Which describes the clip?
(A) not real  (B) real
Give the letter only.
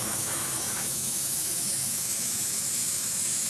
A